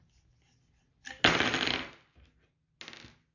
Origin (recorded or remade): recorded